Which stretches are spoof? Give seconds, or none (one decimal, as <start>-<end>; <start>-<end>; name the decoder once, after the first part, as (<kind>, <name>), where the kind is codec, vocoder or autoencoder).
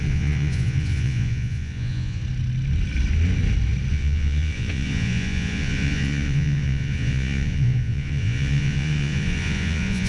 0.0-2.2 (vocoder, Vocos); 3.9-10.1